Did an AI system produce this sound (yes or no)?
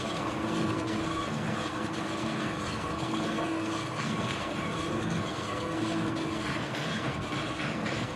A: yes